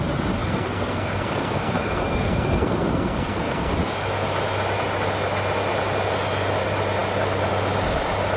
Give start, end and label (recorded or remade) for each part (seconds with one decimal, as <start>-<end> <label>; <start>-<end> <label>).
0.0-0.4 recorded; 0.4-3.7 remade; 3.7-8.4 recorded